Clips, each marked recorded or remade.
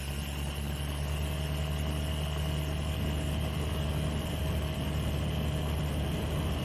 recorded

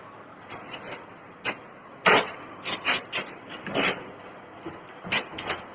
remade